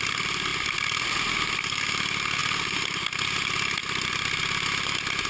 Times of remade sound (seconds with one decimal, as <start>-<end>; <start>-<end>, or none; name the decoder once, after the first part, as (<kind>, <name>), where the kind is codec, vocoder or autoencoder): none